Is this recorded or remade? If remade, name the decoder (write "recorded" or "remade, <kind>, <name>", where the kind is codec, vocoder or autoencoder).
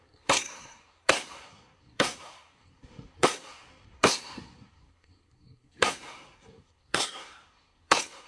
remade, codec, SNAC